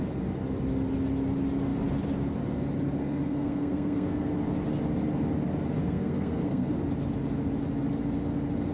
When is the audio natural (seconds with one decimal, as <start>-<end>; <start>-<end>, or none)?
0.0-3.0; 4.3-5.8; 6.7-8.7